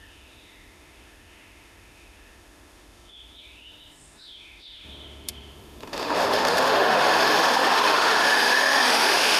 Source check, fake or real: fake